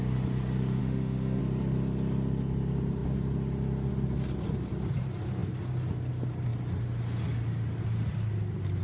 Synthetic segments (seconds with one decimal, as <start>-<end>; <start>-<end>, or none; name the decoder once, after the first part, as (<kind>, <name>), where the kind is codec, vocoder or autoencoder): 0.8-1.4 (autoencoder, DAC-VAE)